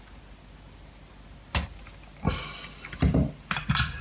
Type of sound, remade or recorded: recorded